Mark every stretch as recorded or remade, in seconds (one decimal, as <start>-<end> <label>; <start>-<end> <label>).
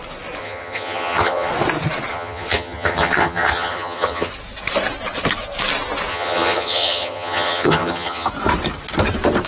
0.0-0.4 recorded; 0.4-1.5 remade; 1.5-2.1 recorded; 2.1-4.3 remade; 4.3-6.1 recorded; 6.1-8.3 remade; 8.3-9.5 recorded